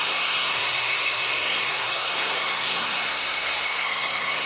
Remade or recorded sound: remade